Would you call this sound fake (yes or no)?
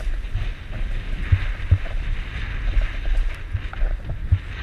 no